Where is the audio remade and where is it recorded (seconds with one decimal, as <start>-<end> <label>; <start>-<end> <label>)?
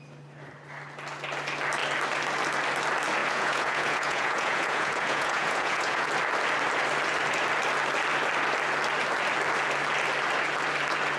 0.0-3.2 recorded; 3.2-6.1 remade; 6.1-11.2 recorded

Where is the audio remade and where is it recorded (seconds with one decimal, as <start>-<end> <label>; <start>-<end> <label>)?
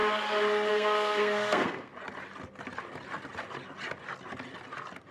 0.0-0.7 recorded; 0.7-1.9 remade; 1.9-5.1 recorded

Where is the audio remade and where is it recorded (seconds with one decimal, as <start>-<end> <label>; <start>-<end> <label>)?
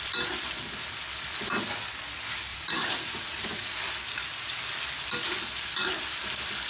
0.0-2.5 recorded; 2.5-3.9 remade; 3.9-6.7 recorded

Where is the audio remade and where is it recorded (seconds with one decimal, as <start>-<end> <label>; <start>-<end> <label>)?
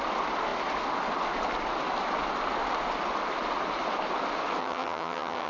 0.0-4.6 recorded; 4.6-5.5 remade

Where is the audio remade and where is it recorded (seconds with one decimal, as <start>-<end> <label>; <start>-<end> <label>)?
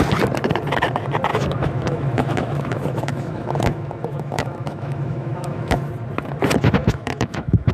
0.0-1.3 recorded; 1.3-5.9 remade; 5.9-6.8 recorded; 6.8-7.7 remade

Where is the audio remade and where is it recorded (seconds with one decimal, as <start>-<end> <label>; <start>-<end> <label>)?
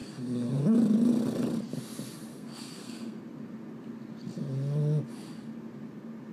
0.0-0.6 remade; 0.6-2.3 recorded; 2.3-3.2 remade; 3.2-6.3 recorded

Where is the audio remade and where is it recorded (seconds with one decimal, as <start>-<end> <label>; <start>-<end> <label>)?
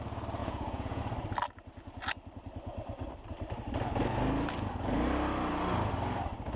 0.0-0.4 recorded; 0.4-1.0 remade; 1.0-6.6 recorded